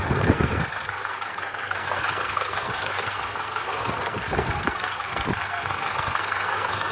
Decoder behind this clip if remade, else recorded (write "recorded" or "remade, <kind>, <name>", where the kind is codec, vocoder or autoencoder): remade, codec, SNAC